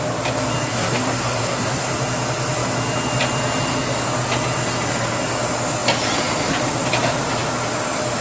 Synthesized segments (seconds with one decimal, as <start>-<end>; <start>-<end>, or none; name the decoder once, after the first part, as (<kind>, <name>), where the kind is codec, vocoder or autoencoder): 0.7-1.9 (codec, SNAC)